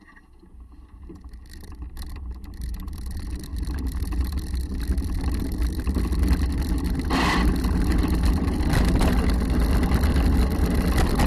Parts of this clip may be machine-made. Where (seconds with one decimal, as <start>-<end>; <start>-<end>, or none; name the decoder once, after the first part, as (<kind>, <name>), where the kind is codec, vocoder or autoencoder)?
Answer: none